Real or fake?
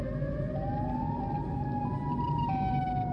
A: real